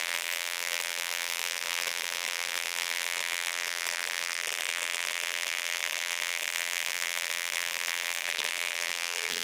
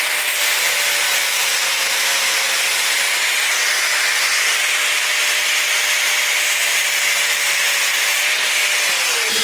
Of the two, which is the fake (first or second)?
first